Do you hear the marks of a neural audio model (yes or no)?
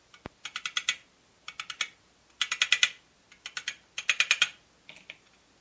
no